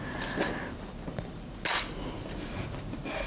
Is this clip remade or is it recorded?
recorded